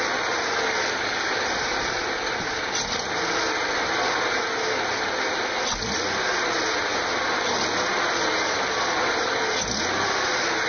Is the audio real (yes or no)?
yes